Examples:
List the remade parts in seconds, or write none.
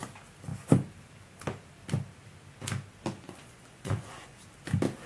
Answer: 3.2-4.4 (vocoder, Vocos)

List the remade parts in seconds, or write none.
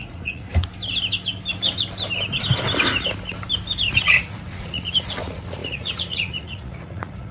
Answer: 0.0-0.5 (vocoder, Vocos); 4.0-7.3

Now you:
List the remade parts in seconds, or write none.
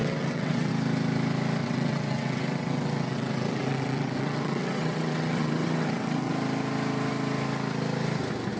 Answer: 0.0-0.7 (vocoder, WaveNeXt); 1.6-6.3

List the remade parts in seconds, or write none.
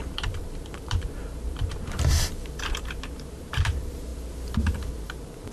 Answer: 0.0-5.5 (vocoder, BigVGAN v2)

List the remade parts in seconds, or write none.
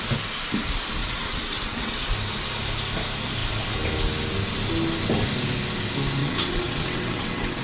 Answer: 1.0-2.1 (vocoder, WaveNeXt); 6.2-7.6